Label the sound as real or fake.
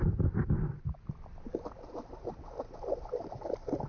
real